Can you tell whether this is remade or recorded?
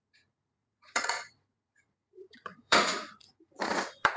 remade